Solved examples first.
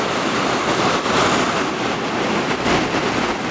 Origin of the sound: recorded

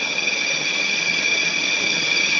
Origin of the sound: remade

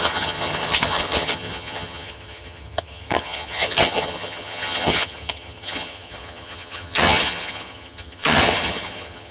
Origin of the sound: remade